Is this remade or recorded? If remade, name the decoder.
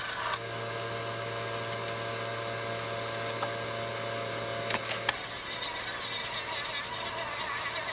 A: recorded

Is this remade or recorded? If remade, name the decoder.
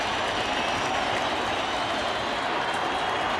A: recorded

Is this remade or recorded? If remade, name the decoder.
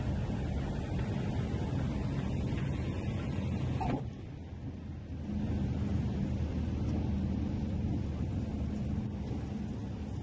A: recorded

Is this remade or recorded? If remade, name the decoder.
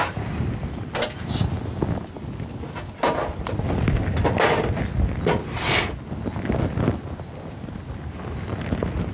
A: recorded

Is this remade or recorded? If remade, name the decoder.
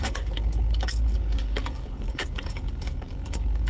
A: remade, codec, DAC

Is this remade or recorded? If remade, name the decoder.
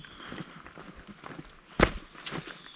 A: recorded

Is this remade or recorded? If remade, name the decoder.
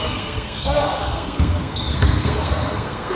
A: remade, codec, SNAC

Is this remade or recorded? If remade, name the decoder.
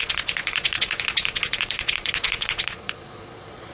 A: remade, vocoder, Vocos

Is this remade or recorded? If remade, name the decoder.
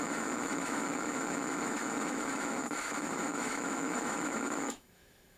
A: remade, autoencoder, DAC-VAE